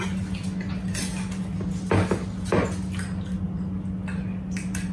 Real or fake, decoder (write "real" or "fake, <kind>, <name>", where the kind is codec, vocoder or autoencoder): real